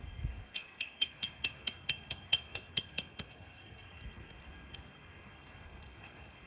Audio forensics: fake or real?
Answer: fake